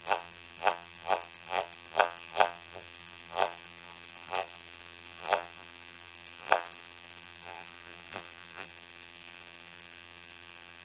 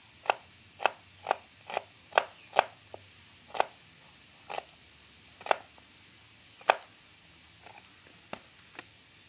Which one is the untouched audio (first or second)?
second